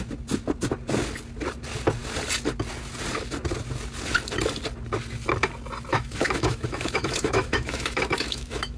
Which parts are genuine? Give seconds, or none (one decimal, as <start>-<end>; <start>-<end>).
0.0-5.9